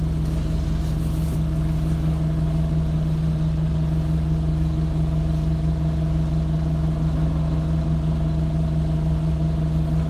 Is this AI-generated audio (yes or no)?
no